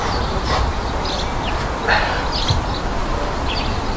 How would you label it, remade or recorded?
recorded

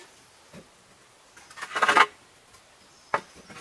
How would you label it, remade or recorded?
recorded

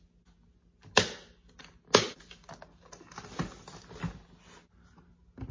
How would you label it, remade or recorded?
recorded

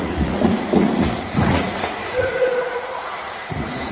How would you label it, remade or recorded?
remade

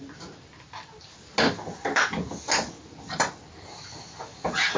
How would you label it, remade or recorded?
recorded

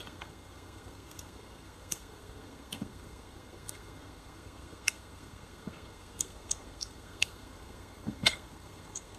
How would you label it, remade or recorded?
remade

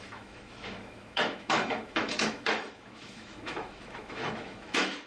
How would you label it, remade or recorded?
remade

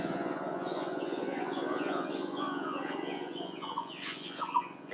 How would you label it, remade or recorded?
remade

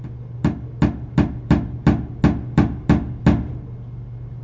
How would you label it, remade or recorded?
recorded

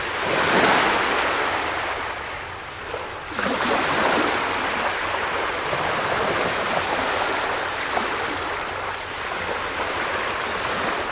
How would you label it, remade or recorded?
recorded